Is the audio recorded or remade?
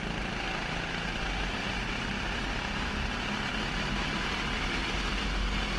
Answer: recorded